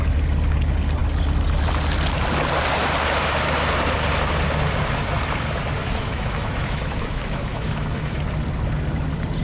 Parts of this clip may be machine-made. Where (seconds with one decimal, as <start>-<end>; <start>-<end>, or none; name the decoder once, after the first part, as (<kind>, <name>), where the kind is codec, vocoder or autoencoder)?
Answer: 5.8-8.2 (autoencoder, DAC-VAE)

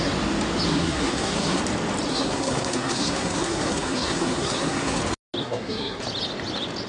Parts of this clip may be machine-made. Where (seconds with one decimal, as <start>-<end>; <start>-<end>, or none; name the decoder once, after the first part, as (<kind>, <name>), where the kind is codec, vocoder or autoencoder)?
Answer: 0.7-1.6 (codec, SNAC); 2.1-5.0; 5.4-6.0

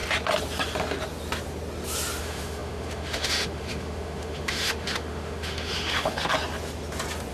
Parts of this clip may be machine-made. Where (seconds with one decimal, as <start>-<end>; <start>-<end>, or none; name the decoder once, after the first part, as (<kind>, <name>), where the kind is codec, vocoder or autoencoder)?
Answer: 2.2-6.3 (autoencoder, DAC-VAE)

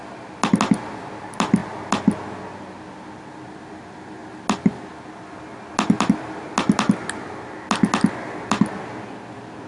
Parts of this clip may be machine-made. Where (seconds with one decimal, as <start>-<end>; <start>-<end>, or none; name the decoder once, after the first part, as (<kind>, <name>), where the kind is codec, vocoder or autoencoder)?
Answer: none

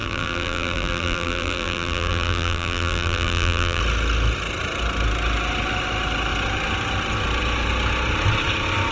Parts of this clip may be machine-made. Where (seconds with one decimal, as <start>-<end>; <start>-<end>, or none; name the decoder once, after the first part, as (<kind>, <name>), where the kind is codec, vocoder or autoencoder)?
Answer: 0.0-3.8 (vocoder, BigVGAN v2)

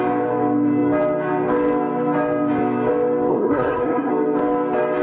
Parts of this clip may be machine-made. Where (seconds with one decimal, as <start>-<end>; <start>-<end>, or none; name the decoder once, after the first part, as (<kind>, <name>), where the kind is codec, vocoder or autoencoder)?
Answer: 3.3-4.1 (codec, SNAC)

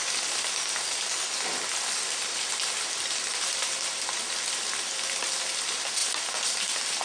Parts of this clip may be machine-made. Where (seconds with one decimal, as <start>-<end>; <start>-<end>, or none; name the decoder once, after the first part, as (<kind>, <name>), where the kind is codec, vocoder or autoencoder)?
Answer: none

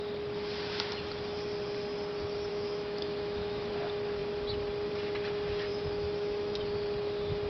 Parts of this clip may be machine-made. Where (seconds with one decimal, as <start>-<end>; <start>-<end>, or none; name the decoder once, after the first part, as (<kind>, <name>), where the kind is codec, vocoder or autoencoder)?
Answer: 2.5-3.7 (autoencoder, DAC-VAE); 5.7-6.6